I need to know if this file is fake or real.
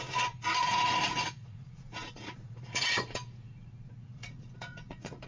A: fake